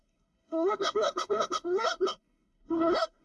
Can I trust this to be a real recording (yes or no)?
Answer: no